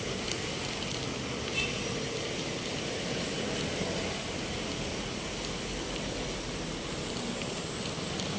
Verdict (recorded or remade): recorded